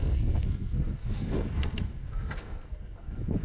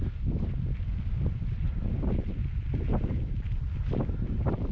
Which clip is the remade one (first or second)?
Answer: first